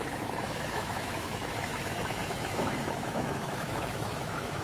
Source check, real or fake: fake